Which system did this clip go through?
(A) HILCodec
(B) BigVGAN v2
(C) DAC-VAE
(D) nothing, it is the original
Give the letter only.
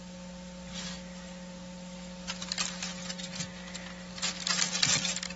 D